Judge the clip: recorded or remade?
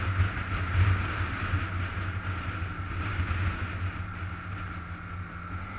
recorded